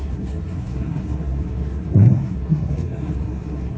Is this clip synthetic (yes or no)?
yes